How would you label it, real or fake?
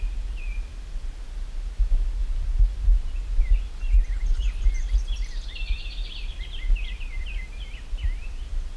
real